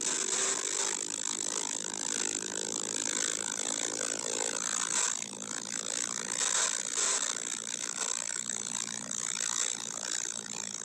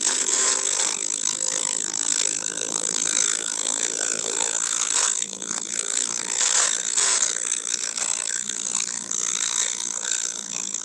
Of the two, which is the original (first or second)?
first